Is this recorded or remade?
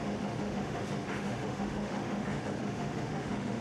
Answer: remade